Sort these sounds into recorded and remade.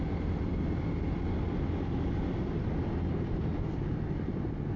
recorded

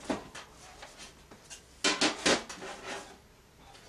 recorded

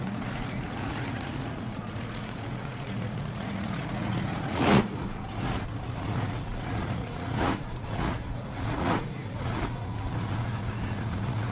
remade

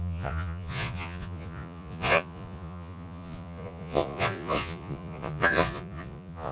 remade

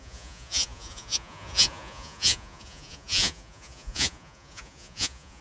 remade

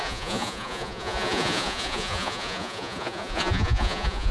remade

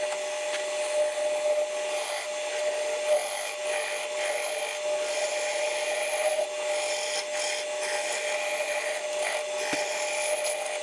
recorded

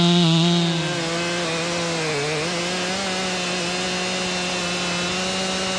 recorded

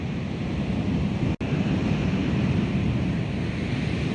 recorded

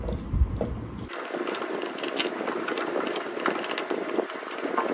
recorded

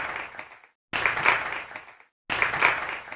recorded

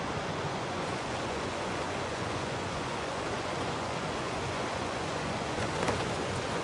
remade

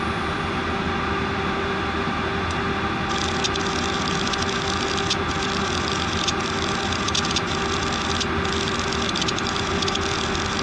recorded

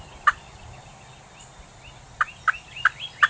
recorded